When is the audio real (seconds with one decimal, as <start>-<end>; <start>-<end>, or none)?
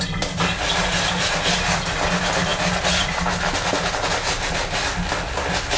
0.0-5.8